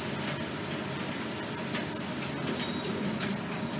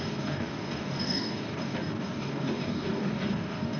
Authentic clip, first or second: first